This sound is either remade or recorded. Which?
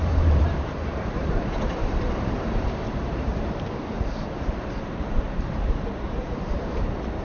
remade